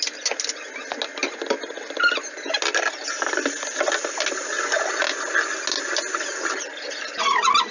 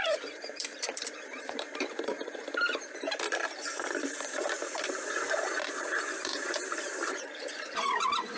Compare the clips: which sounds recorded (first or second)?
first